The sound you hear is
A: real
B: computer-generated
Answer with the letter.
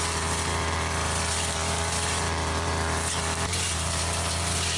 B